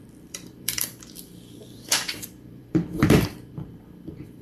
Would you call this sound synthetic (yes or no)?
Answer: yes